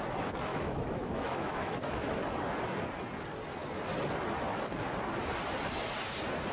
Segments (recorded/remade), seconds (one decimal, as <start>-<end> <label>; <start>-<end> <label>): 0.0-0.5 recorded; 0.5-2.1 remade; 2.1-6.5 recorded